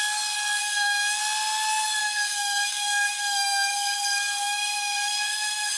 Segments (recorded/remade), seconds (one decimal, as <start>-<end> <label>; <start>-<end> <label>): 0.0-0.6 recorded; 0.6-1.2 remade; 1.2-2.0 recorded; 2.0-5.8 remade